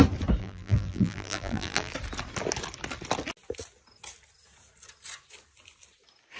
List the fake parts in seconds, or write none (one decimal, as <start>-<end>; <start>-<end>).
0.4-1.9